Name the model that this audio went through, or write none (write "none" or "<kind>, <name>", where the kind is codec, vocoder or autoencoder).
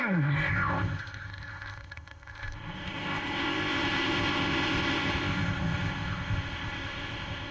codec, ZipCodec